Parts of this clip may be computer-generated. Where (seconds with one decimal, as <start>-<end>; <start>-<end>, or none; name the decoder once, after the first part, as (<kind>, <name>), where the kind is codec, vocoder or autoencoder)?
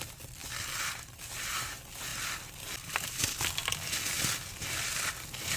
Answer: none